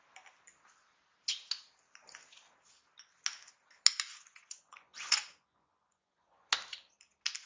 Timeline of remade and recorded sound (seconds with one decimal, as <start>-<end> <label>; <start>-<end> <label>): 0.0-4.1 recorded; 4.1-6.5 remade; 6.5-7.5 recorded